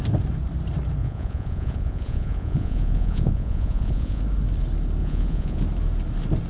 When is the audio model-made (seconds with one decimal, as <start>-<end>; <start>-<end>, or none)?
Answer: 1.0-4.2; 5.0-5.6